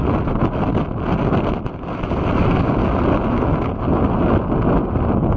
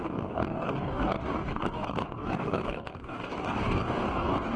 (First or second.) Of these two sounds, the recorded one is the first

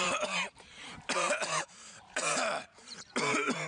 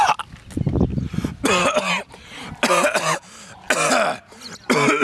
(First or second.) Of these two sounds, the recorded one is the second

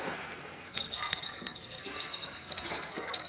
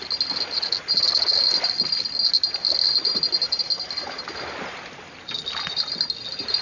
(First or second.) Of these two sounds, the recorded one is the second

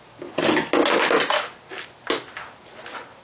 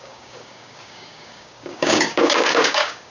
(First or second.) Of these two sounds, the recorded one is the first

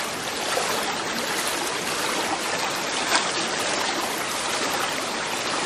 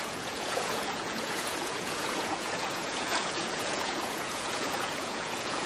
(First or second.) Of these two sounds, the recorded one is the first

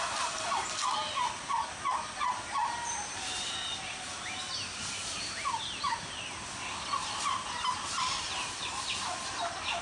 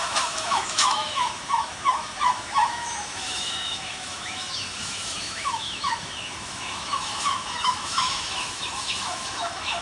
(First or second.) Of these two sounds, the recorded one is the first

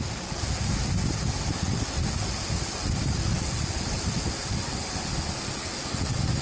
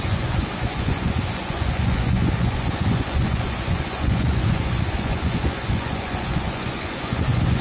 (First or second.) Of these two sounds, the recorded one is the first